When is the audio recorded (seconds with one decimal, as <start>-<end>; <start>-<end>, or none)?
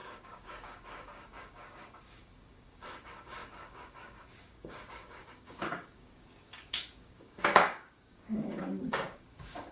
none